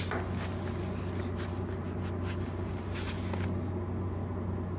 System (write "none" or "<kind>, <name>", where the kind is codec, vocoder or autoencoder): none